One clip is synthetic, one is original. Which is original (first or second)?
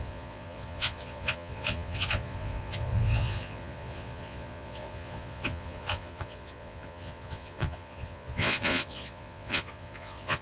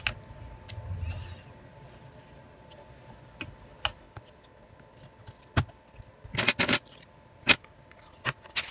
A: second